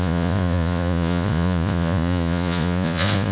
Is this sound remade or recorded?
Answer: remade